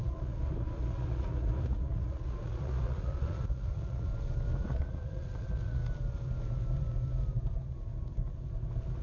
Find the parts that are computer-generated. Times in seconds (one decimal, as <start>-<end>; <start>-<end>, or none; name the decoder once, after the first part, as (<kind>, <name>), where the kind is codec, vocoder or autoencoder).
0.0-4.1 (vocoder, Vocos); 4.6-5.8